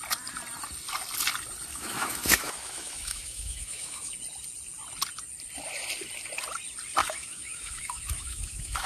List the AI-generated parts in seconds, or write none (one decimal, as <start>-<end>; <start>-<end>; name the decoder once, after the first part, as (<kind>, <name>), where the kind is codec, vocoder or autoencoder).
1.7-4.1 (autoencoder, DAC-VAE); 7.0-8.9